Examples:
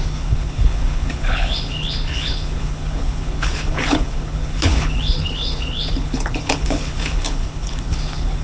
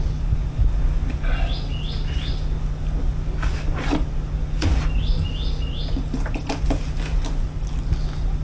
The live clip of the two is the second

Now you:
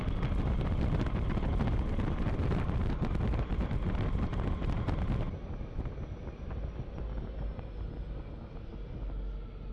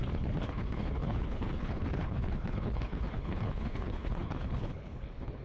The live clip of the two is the first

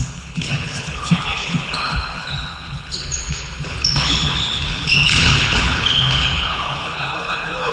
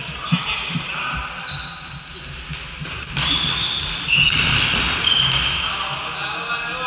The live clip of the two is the second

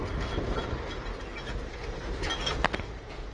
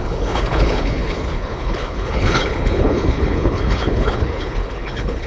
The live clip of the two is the first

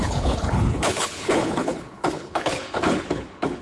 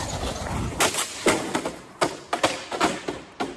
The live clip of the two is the second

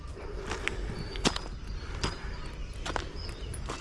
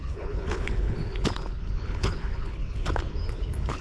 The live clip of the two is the first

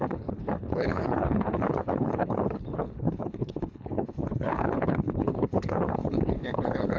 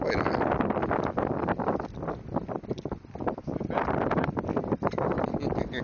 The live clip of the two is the second